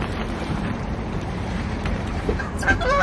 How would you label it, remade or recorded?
remade